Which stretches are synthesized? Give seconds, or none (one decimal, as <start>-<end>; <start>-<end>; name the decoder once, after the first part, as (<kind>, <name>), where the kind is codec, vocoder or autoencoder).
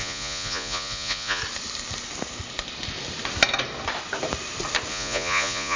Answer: 0.0-1.4 (vocoder, Vocos); 4.9-5.8